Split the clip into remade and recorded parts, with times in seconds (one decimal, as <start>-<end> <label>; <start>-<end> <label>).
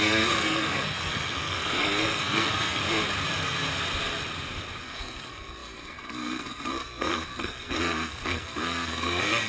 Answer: 0.0-2.8 remade; 2.8-4.8 recorded; 4.8-9.5 remade